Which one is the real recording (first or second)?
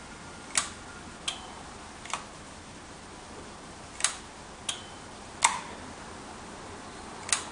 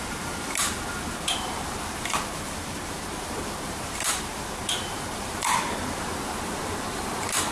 first